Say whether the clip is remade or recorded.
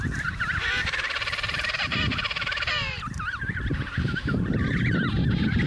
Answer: remade